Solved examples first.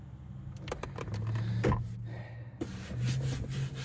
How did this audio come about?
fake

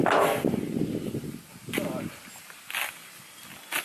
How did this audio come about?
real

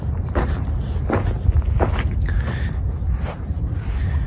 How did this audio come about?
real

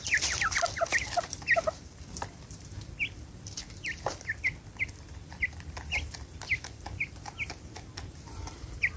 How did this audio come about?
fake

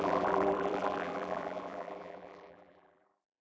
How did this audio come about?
fake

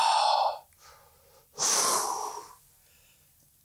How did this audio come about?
real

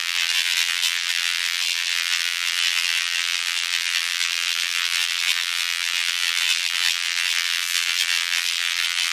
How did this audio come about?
fake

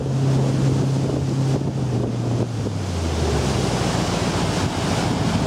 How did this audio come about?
real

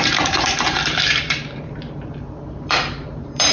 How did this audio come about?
fake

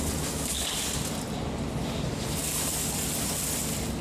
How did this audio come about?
fake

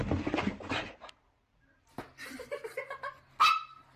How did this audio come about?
real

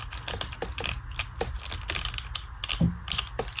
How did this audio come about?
real